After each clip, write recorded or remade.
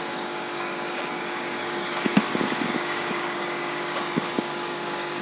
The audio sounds remade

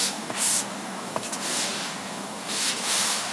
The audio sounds remade